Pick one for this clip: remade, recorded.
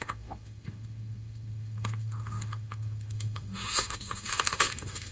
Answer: remade